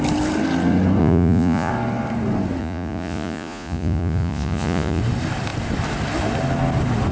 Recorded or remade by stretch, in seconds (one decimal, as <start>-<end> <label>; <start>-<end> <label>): 0.0-1.0 recorded; 1.0-1.7 remade; 1.7-2.6 recorded; 2.6-5.0 remade; 5.0-7.1 recorded